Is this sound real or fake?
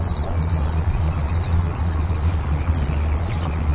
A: fake